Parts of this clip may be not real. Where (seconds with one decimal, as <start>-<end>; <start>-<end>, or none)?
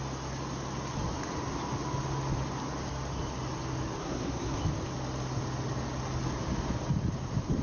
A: 4.0-4.6